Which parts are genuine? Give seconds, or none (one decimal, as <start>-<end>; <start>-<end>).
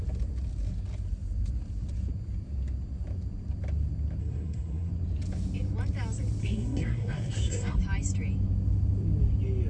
0.0-4.2; 4.9-6.4; 7.8-9.7